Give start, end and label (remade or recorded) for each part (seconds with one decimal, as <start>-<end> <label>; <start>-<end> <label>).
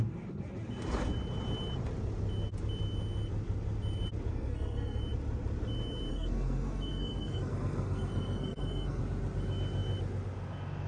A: 0.0-4.3 recorded; 4.3-5.0 remade; 5.0-6.1 recorded; 6.1-9.0 remade; 9.0-10.9 recorded